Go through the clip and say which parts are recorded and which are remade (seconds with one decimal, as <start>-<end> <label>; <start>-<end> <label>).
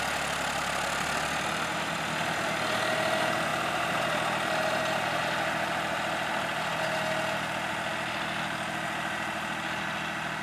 0.0-10.4 recorded